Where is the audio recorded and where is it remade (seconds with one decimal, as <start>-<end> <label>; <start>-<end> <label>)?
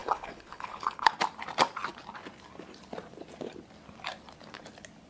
0.0-1.1 remade; 1.1-5.1 recorded